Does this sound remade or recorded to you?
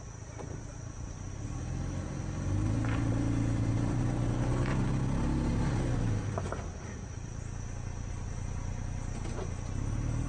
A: recorded